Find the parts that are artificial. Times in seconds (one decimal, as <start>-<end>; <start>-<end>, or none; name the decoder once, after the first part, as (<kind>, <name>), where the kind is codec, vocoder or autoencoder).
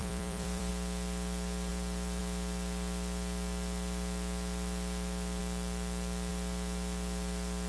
0.0-0.7 (vocoder, BigVGAN v2); 1.7-2.2